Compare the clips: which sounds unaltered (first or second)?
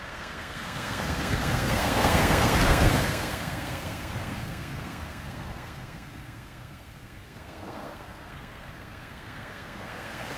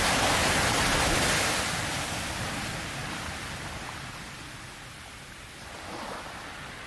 second